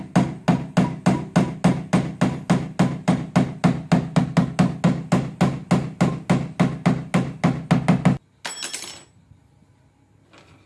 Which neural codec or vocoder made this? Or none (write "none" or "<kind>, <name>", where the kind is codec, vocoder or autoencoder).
none